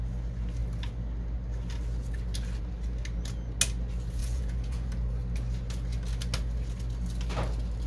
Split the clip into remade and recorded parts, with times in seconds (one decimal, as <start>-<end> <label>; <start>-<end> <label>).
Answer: 0.0-4.2 recorded; 4.2-4.9 remade; 4.9-7.9 recorded